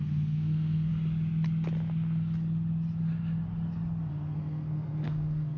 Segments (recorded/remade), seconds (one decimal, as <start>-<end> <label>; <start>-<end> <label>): 0.0-0.9 remade; 0.9-4.1 recorded; 4.1-5.6 remade